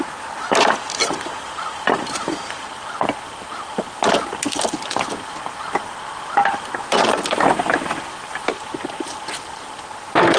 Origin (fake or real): real